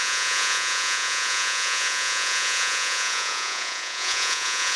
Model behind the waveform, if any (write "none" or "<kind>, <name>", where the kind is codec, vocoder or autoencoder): vocoder, Vocos